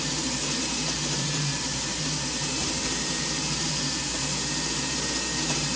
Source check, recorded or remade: remade